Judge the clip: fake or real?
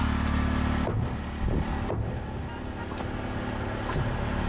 real